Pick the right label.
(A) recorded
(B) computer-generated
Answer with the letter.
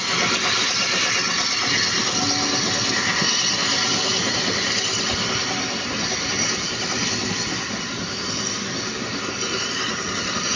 A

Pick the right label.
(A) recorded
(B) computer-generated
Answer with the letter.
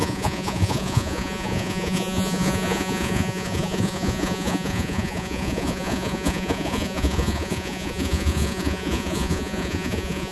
B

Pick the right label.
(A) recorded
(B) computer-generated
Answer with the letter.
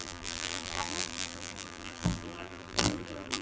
B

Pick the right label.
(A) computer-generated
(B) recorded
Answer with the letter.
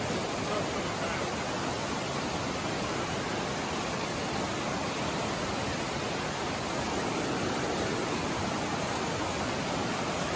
B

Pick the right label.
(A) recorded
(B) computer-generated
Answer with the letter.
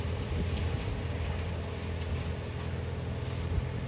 A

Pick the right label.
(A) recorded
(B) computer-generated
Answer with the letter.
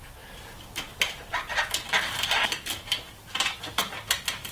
A